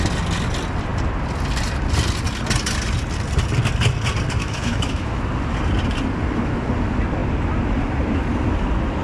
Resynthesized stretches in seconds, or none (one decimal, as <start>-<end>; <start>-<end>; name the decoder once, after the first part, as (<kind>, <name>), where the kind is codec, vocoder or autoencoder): 4.4-5.2 (autoencoder, DAC-VAE)